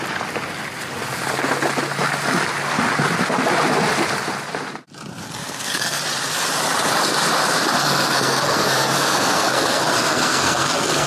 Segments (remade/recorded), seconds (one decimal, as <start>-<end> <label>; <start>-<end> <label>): 0.0-5.4 recorded; 5.4-6.0 remade; 6.0-7.8 recorded; 7.8-11.1 remade